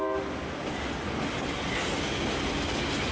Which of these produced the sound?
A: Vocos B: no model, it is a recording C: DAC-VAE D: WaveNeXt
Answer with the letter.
B